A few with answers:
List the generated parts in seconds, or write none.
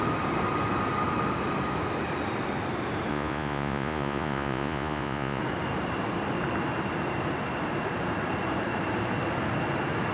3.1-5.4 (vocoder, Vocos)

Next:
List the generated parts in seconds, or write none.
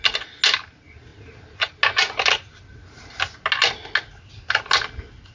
none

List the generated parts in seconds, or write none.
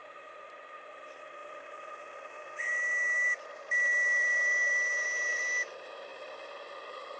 0.0-0.6 (vocoder, BigVGAN v2)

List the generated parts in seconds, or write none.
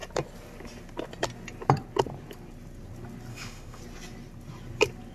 3.3-3.8 (autoencoder, DAC-VAE)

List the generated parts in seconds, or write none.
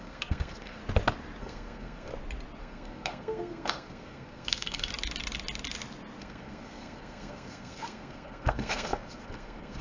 0.0-0.8 (codec, SNAC); 1.4-2.1; 2.6-4.9; 6.2-9.8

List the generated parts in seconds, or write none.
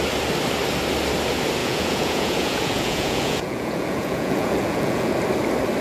1.6-5.1 (vocoder, Vocos)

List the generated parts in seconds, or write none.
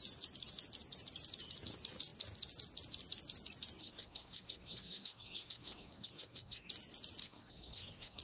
3.8-6.7 (codec, SNAC); 7.2-8.2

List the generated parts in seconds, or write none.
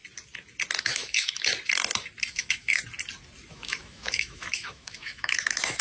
0.8-1.5 (autoencoder, DAC-VAE); 2.3-2.8; 3.5-5.8